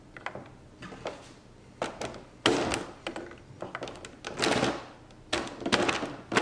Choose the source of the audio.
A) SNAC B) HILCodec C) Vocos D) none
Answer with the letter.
D